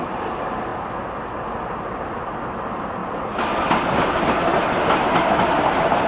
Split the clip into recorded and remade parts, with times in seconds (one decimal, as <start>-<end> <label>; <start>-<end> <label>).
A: 0.0-6.1 recorded